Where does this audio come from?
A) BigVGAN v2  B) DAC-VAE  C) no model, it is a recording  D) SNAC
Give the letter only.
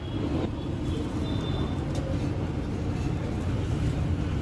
C